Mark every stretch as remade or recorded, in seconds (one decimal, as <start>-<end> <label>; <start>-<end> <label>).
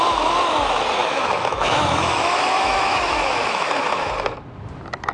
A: 0.0-1.0 recorded; 1.0-4.1 remade; 4.1-5.1 recorded